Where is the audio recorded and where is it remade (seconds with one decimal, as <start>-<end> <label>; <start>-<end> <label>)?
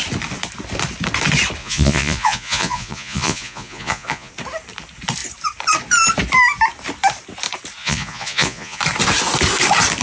0.0-1.6 recorded; 1.6-4.3 remade; 4.3-7.8 recorded; 7.8-8.8 remade; 8.8-10.0 recorded